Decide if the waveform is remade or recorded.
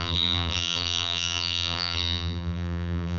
remade